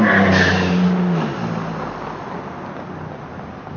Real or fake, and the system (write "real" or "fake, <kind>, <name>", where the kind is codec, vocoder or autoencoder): real